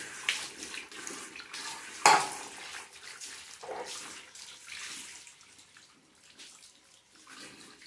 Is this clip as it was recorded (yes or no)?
yes